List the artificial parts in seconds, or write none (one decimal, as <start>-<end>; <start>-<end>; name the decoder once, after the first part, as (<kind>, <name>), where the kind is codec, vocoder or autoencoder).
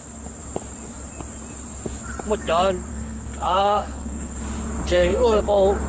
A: 2.9-4.4 (codec, SNAC); 4.9-5.4